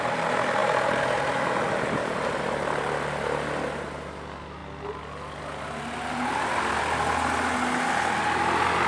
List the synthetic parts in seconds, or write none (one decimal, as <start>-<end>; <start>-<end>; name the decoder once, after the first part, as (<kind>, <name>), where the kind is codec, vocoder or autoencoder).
0.6-2.4 (vocoder, BigVGAN v2)